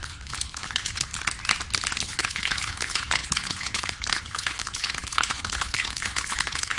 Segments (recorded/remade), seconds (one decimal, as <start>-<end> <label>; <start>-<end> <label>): 0.0-1.1 remade; 1.1-2.0 recorded; 2.0-6.8 remade